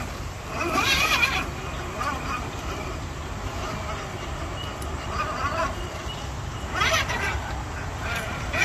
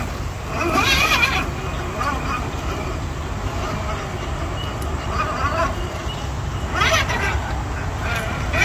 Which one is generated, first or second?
first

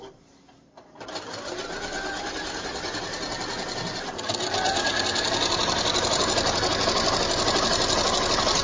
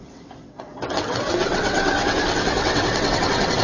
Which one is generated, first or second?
second